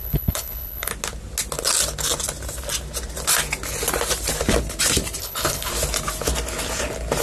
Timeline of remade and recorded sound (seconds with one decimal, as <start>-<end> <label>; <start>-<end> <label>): 0.0-0.9 remade; 0.9-5.2 recorded; 5.2-5.7 remade; 5.7-7.2 recorded